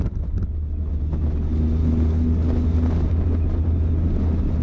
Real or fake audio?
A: real